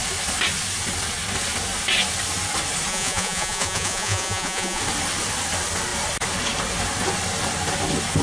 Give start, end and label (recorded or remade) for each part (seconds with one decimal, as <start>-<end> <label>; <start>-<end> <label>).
0.0-2.9 recorded; 2.9-4.8 remade; 4.8-8.2 recorded